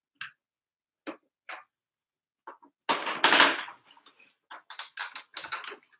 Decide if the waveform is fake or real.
real